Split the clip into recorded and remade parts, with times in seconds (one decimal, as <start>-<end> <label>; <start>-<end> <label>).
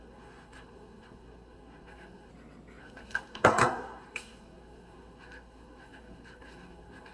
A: 0.0-2.3 remade; 2.3-2.8 recorded; 2.8-7.1 remade